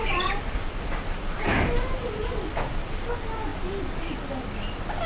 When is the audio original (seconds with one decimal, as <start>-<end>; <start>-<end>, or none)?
3.1-5.1